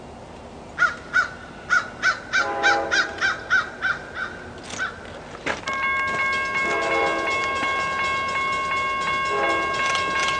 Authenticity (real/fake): real